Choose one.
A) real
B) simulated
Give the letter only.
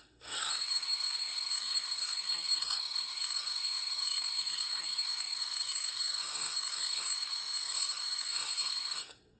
B